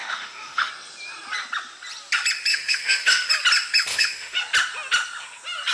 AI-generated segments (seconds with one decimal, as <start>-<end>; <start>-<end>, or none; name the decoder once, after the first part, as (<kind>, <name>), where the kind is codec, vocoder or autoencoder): 0.0-0.7 (autoencoder, DAC-VAE); 2.5-3.3; 3.9-4.4